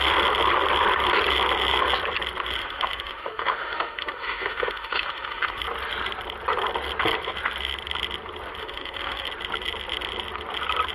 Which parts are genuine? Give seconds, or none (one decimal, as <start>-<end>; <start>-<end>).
0.0-2.6; 5.6-8.6; 9.3-10.9